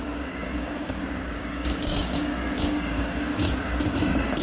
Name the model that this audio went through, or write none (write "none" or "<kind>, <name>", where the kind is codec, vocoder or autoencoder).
codec, DAC